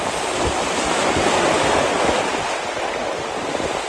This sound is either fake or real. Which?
real